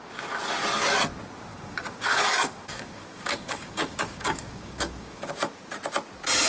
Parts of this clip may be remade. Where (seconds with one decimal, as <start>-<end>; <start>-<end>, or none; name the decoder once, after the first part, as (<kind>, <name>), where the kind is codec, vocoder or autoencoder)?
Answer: 1.5-5.3 (codec, DAC)